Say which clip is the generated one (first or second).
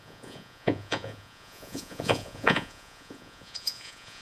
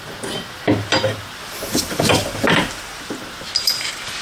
first